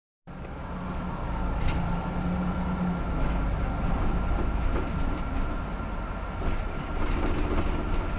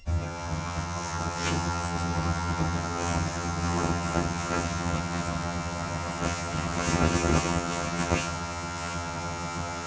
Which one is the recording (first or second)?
first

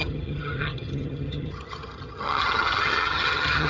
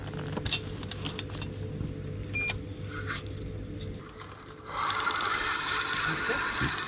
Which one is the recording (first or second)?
second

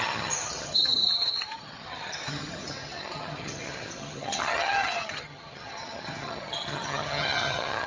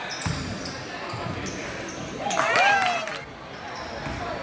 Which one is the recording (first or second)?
second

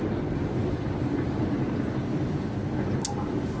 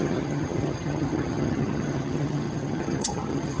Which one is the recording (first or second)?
first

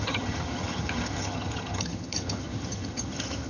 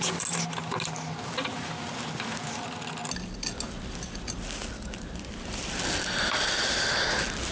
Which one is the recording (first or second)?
second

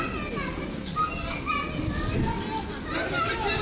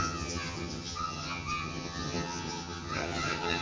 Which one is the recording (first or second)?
first